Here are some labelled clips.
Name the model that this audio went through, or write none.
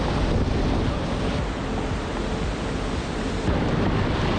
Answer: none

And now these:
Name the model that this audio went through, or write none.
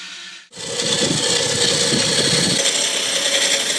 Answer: none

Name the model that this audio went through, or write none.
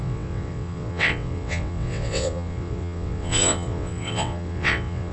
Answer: vocoder, WaveNeXt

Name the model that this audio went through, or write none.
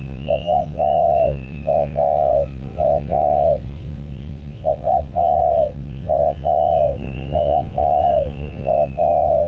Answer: vocoder, WaveNeXt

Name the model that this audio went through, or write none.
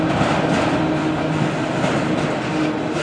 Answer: none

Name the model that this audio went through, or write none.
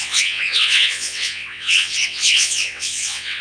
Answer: vocoder, WaveNeXt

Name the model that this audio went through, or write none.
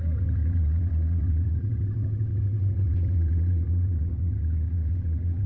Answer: vocoder, WaveNeXt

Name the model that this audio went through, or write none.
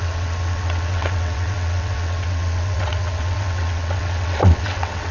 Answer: vocoder, WaveNeXt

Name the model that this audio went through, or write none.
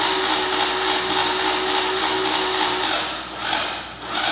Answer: none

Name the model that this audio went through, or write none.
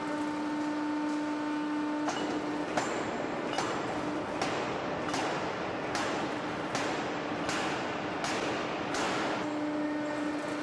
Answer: none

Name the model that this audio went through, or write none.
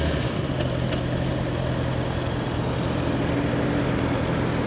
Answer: none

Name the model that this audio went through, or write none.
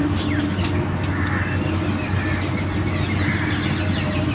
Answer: none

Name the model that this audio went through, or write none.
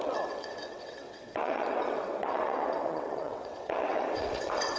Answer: vocoder, WaveNeXt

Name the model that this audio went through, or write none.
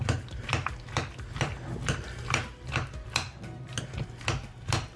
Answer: none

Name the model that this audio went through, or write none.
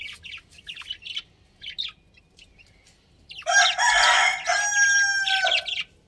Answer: none